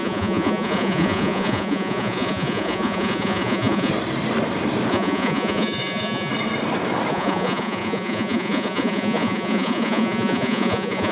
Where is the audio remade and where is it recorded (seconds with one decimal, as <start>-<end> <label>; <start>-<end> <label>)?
0.0-3.9 remade; 3.9-4.9 recorded; 4.9-6.3 remade; 6.3-7.1 recorded; 7.1-11.1 remade

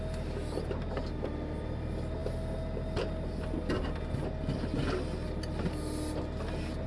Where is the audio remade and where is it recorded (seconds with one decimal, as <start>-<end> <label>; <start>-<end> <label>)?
0.0-6.9 recorded

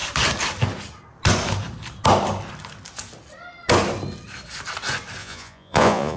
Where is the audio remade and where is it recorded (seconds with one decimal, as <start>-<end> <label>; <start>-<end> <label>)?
0.0-5.2 recorded; 5.2-6.2 remade

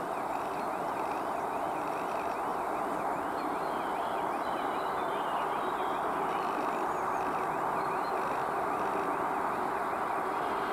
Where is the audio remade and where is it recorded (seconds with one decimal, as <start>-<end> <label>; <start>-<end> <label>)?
0.0-10.7 recorded

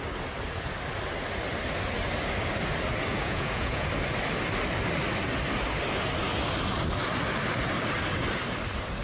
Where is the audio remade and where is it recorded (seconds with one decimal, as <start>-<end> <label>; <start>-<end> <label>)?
0.0-3.1 recorded; 3.1-3.9 remade; 3.9-9.0 recorded